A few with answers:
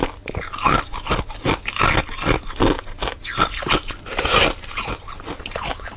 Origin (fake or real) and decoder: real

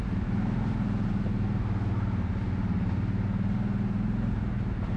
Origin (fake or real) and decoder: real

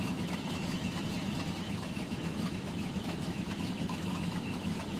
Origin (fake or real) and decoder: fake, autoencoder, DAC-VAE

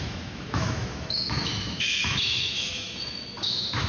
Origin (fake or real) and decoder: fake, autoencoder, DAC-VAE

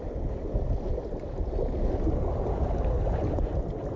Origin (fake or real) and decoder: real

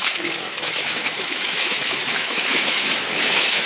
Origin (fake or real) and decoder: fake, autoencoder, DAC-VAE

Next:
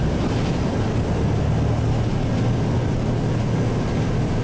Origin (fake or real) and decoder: real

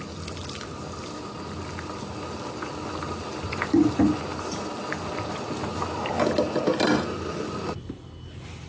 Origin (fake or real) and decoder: real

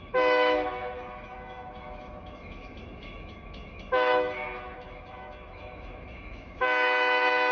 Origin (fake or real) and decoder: fake, autoencoder, DAC-VAE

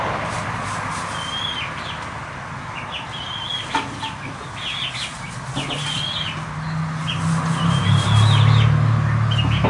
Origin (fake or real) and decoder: real